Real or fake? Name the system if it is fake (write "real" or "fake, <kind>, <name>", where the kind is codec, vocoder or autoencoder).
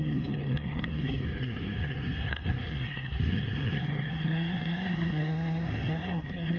fake, codec, SNAC